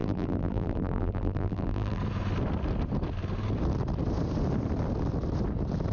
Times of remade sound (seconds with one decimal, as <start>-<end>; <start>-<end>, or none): 0.0-2.0